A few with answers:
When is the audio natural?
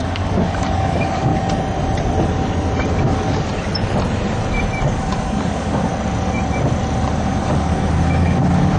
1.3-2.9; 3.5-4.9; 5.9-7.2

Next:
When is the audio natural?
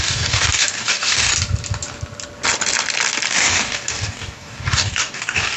1.3-3.3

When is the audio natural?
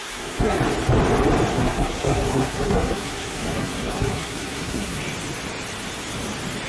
0.6-1.5; 5.0-6.7